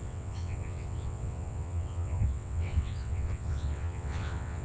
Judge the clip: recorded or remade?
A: remade